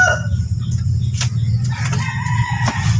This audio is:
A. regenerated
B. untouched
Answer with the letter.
B